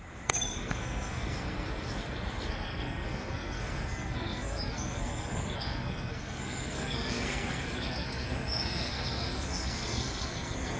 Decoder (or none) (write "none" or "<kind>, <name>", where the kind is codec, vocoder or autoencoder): codec, SNAC